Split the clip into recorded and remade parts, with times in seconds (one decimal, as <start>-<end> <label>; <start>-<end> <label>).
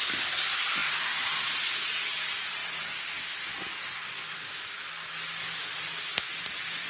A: 0.0-6.9 recorded